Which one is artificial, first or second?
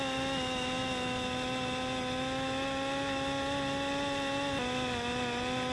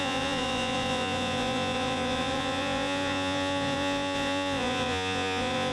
second